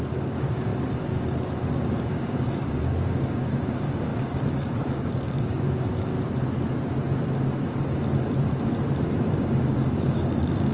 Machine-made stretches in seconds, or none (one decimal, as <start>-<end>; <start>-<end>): 0.0-6.1; 9.3-10.7